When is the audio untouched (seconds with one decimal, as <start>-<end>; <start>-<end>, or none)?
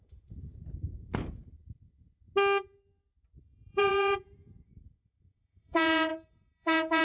0.5-3.4